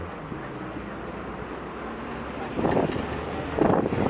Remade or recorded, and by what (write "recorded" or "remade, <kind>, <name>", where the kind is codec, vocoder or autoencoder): recorded